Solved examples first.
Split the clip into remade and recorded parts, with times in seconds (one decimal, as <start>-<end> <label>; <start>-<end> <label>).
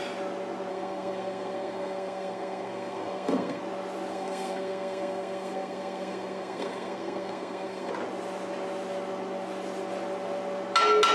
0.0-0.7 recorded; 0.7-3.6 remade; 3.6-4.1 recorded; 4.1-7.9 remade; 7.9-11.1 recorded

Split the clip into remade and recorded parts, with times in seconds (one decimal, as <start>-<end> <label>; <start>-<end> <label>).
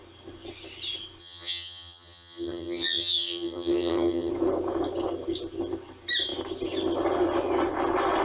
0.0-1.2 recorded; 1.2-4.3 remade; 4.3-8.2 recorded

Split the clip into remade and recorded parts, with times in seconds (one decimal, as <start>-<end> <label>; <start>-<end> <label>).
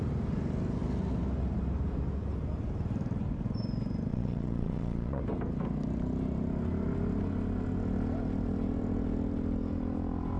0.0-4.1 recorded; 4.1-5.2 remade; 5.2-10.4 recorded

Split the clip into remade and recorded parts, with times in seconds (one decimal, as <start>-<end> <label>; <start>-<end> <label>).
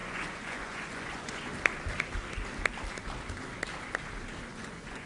0.0-1.5 remade; 1.5-4.5 recorded; 4.5-5.1 remade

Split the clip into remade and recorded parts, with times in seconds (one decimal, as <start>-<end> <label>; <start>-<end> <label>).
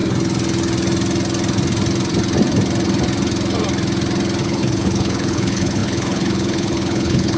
0.0-4.4 recorded; 4.4-7.4 remade